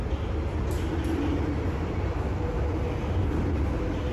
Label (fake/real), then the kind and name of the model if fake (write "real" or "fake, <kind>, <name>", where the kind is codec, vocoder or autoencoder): real